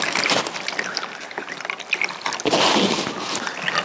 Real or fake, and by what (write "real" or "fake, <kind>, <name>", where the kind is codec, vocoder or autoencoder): real